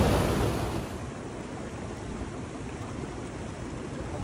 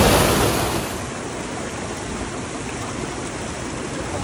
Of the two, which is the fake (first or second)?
first